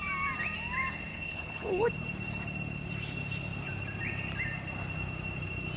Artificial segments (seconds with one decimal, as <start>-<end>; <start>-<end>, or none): 1.1-1.9